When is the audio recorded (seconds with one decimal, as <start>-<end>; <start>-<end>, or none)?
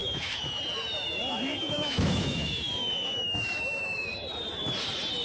0.6-1.3; 4.1-5.2